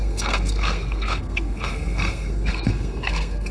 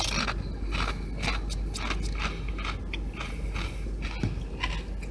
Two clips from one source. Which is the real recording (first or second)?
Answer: second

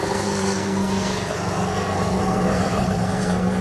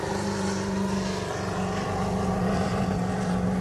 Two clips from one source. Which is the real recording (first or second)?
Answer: second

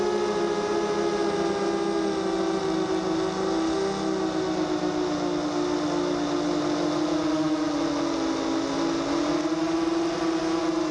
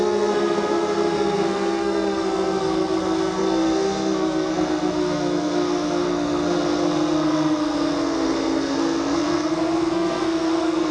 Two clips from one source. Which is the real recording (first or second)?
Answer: first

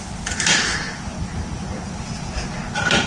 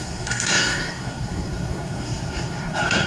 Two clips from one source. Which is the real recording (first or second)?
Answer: first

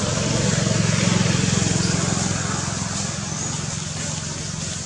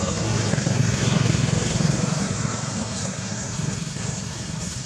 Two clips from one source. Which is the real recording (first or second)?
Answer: first